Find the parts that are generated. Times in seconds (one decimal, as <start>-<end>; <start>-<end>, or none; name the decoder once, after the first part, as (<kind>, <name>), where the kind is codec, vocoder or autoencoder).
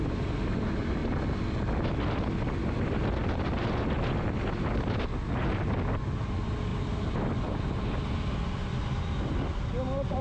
none